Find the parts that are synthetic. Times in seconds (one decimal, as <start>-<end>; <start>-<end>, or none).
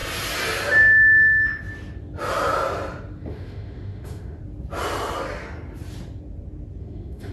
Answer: 3.3-4.4; 6.8-7.3